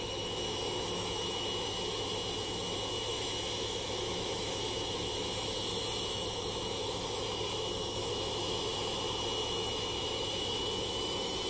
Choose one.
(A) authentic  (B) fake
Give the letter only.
B